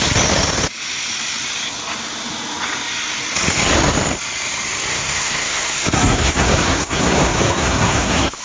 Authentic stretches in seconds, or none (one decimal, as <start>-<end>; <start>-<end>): 0.0-4.9